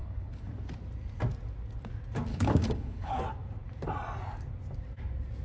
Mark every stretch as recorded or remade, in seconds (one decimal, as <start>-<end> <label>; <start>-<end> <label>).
0.0-0.5 remade; 0.5-2.3 recorded; 2.3-3.2 remade; 3.2-5.4 recorded